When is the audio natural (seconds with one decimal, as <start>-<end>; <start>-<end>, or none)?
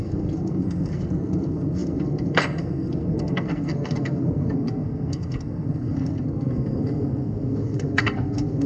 none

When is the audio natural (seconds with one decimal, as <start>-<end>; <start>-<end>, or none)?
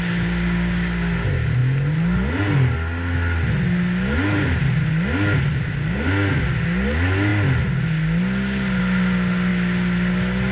0.0-5.8; 6.4-10.5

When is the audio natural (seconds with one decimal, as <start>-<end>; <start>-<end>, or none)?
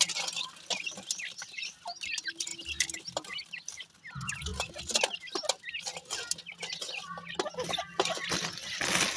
0.0-9.2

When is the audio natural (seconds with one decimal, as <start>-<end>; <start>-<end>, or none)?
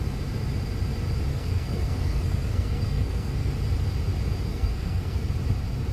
0.0-1.3; 3.5-4.5; 5.3-5.9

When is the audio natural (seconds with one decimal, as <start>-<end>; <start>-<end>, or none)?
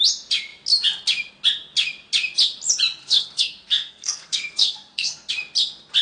0.0-3.0; 5.3-6.0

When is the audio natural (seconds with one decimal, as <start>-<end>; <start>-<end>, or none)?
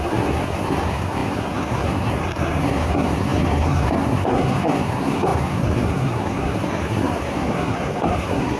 none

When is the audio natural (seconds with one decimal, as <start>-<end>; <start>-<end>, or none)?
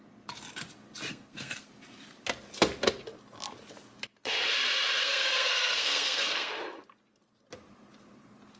0.0-1.1; 1.7-5.0; 6.5-8.6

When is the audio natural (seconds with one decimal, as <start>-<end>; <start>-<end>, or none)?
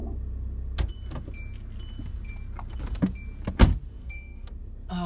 0.0-4.0; 4.5-5.1